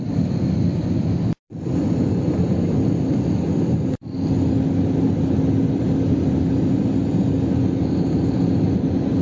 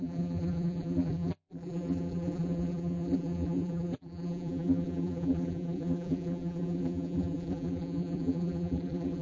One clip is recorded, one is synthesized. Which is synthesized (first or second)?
second